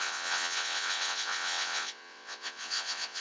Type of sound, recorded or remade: remade